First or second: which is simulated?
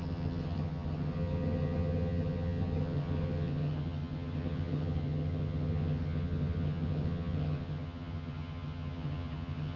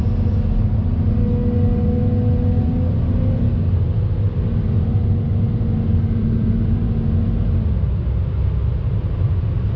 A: first